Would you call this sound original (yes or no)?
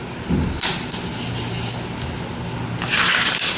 yes